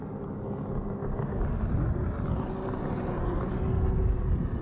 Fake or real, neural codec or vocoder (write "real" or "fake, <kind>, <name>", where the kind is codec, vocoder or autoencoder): real